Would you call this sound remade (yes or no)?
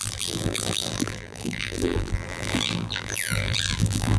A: yes